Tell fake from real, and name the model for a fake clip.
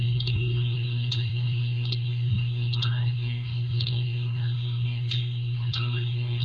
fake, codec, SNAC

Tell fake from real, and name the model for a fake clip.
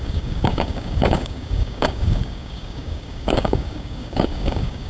fake, codec, DAC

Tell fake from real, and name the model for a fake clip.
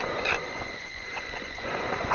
fake, vocoder, Vocos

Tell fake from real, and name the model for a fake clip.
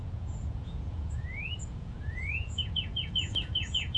fake, vocoder, Vocos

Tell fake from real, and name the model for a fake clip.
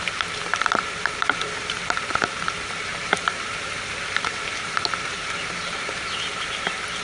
fake, vocoder, BigVGAN v2